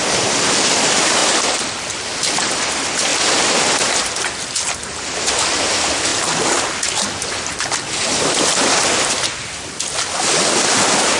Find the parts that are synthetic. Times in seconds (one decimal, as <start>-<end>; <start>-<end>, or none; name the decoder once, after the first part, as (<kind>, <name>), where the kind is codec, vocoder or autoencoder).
none